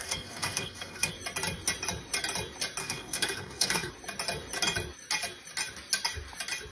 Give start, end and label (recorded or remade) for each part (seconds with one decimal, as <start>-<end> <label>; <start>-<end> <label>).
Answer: 0.0-1.1 remade; 1.1-2.8 recorded; 2.8-3.9 remade; 3.9-6.7 recorded